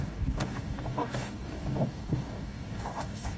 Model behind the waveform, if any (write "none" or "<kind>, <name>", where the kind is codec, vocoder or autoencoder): codec, DAC